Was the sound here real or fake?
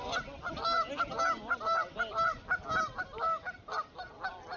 real